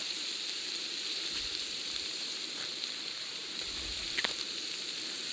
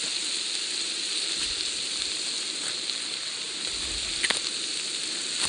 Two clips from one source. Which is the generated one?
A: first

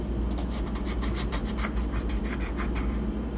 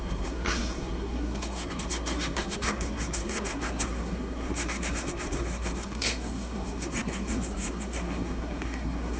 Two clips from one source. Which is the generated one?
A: second